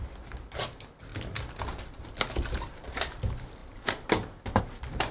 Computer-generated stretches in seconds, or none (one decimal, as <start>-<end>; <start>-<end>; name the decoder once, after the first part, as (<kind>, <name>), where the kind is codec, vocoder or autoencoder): none